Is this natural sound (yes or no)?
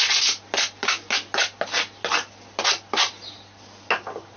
yes